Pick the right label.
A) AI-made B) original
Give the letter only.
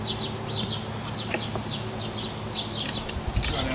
B